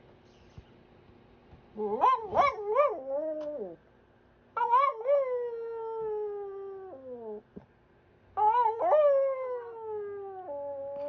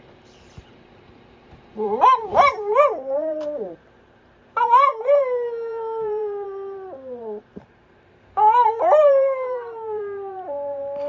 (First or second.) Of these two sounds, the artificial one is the second